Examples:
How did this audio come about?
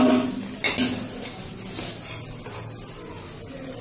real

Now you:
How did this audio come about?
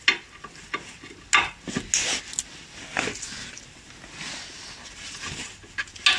real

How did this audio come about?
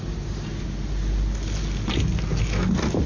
real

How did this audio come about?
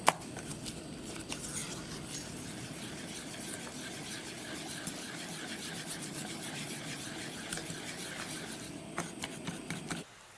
real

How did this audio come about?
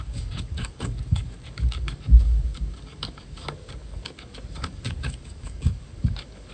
fake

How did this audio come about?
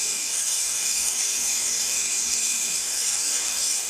fake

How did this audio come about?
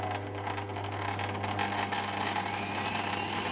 real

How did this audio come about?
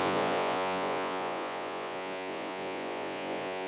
fake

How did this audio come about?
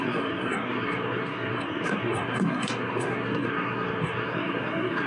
fake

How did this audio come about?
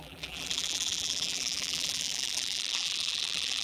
fake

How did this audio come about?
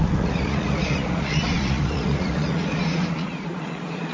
fake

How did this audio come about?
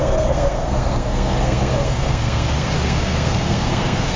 fake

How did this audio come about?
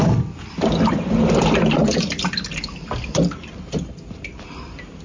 real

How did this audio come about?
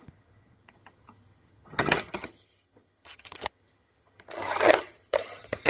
fake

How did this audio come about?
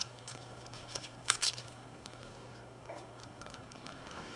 fake